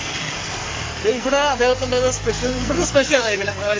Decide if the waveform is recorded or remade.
remade